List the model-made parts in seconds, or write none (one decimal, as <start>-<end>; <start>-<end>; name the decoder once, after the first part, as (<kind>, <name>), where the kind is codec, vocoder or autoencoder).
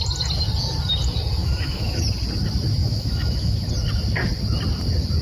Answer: 1.4-2.0 (autoencoder, DAC-VAE); 2.8-3.7